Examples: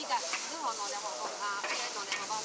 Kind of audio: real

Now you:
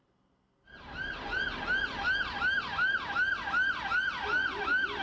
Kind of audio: real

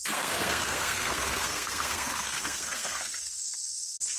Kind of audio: fake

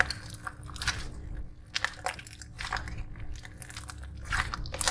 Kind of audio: real